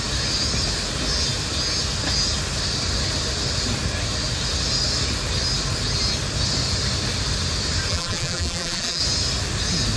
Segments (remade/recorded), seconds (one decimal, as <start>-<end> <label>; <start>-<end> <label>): 0.0-7.9 recorded; 7.9-9.0 remade; 9.0-10.0 recorded